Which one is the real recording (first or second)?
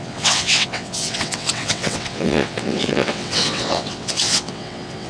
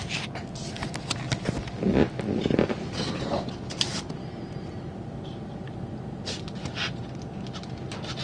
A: second